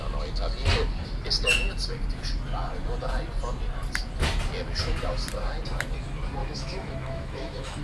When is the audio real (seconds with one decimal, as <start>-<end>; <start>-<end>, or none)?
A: 0.0-6.4